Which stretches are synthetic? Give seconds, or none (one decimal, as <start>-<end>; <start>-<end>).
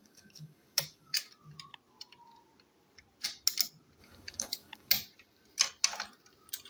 0.0-1.3; 4.0-4.9